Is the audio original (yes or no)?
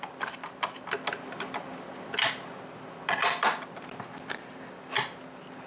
yes